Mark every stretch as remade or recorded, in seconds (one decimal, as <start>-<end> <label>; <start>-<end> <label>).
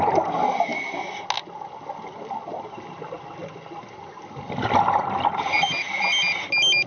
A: 0.0-6.9 recorded